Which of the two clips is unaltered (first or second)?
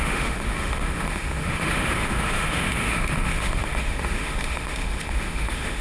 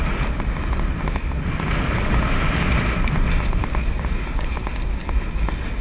second